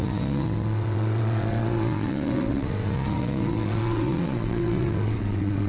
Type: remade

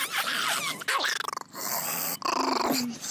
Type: recorded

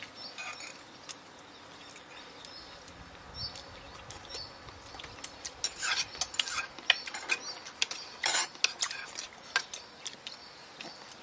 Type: recorded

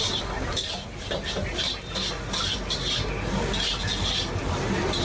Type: recorded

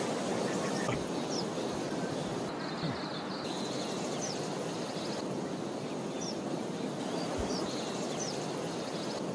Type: recorded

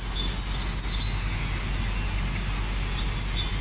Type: recorded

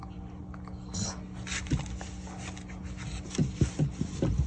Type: recorded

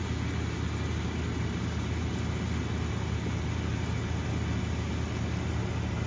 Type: recorded